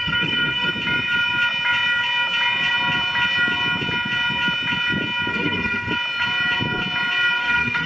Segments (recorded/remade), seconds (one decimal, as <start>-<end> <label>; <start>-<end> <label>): 0.0-0.7 remade; 0.7-5.3 recorded; 5.3-5.9 remade; 5.9-7.4 recorded; 7.4-7.9 remade